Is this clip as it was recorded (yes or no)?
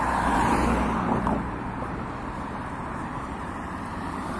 no